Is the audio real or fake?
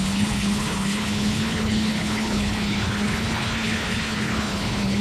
fake